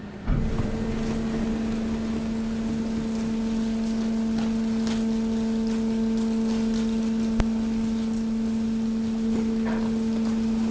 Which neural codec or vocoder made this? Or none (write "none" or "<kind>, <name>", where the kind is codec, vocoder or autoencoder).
none